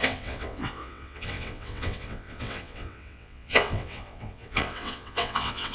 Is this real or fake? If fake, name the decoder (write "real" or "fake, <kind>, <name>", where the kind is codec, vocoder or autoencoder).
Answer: fake, vocoder, WaveNeXt